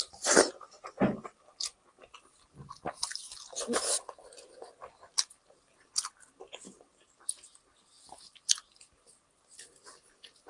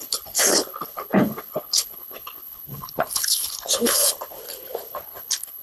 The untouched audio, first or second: first